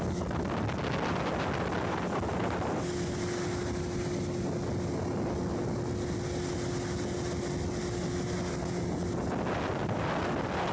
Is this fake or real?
real